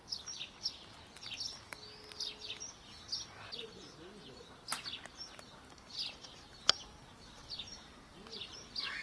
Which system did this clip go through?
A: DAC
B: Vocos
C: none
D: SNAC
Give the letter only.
C